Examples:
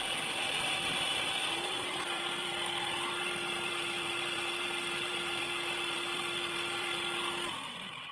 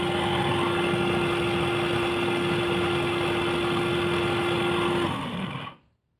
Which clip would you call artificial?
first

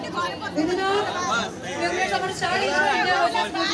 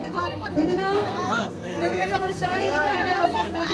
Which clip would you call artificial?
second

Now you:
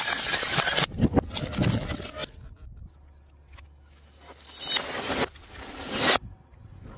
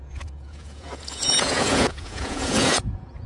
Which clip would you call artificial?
second